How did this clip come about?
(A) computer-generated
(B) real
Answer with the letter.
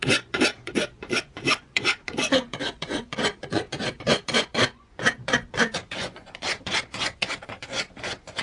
A